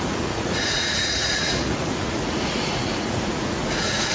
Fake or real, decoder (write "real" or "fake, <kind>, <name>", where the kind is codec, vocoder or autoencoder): fake, vocoder, Vocos